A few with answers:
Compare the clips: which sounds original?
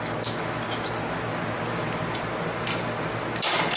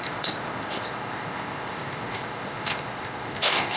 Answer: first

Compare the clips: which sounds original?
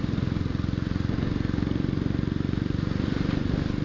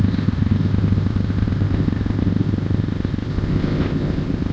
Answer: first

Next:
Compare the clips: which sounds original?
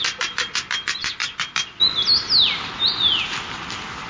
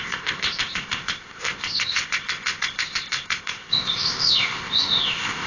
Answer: first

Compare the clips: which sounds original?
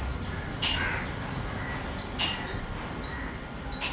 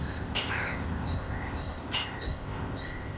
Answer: first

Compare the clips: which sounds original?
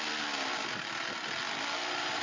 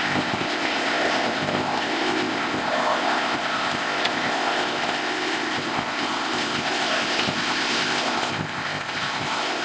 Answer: first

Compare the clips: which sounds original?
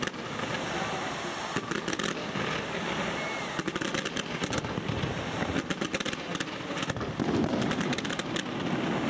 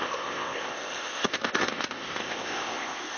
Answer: first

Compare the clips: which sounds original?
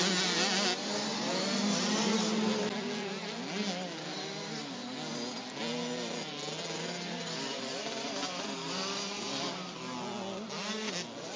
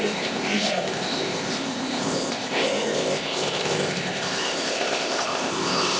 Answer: first